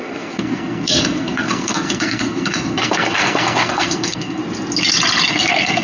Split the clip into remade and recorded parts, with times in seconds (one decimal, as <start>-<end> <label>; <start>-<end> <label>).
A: 0.0-4.4 remade; 4.4-5.3 recorded; 5.3-5.8 remade